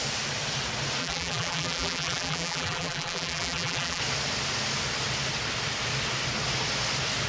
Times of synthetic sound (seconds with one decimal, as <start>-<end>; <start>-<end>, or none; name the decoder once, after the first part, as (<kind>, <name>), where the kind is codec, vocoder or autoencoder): 1.0-4.0 (vocoder, BigVGAN v2)

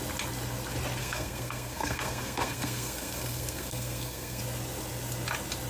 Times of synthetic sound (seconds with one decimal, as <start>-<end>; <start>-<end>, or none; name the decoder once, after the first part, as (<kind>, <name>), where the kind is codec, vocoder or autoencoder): 1.0-4.4 (codec, SNAC)

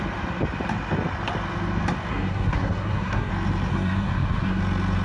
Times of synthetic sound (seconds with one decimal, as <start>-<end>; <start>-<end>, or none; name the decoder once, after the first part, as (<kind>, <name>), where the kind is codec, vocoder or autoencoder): 2.1-3.3 (codec, SNAC); 3.7-4.6

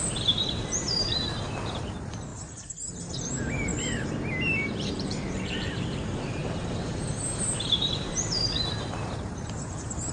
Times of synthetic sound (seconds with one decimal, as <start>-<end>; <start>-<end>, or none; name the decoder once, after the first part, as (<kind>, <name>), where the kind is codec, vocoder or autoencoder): 0.0-3.7 (vocoder, BigVGAN v2); 4.8-10.1

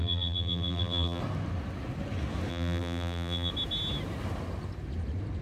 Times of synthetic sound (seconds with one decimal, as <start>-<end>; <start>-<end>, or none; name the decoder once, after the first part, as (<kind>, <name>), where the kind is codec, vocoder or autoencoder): 0.0-1.2 (vocoder, BigVGAN v2); 2.5-3.5

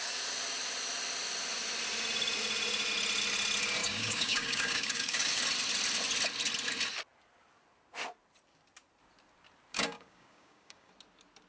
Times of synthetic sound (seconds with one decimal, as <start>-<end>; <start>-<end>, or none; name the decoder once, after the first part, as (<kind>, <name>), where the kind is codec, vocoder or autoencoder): 3.8-5.4 (codec, DAC); 9.7-10.9